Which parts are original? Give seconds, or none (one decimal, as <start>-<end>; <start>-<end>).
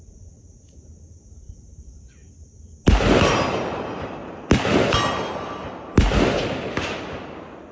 0.0-7.7